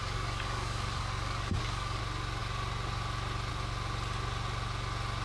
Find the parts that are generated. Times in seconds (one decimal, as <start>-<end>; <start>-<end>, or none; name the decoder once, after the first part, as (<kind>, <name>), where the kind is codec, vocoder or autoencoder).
0.0-2.0 (codec, DAC)